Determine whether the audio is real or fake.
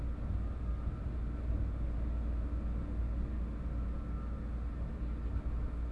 real